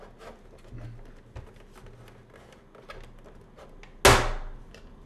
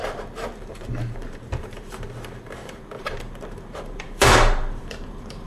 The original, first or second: first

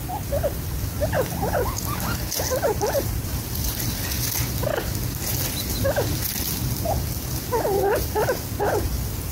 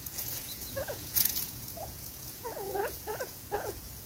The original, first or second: first